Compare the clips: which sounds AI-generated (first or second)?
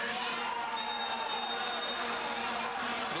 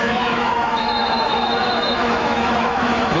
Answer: second